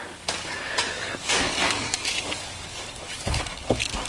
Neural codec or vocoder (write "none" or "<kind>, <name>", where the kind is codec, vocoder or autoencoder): codec, DAC